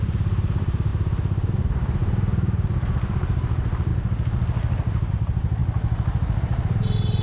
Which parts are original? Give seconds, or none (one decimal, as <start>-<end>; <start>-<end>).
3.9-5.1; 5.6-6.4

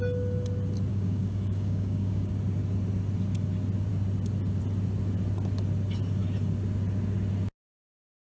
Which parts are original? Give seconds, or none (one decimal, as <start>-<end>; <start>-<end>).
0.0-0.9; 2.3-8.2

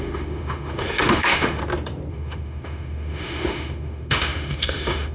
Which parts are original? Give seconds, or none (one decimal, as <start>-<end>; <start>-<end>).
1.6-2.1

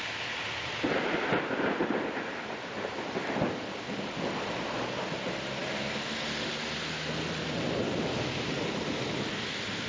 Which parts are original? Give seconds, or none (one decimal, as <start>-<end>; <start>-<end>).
0.0-9.9